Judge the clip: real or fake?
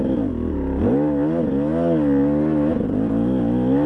real